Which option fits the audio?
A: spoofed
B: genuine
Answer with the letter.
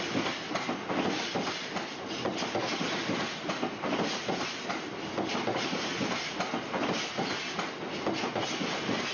B